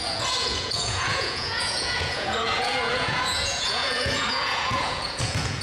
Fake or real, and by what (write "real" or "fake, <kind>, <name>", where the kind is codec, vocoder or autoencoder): fake, vocoder, Vocos